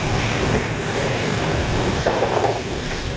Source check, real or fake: fake